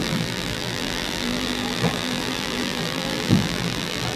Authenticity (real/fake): fake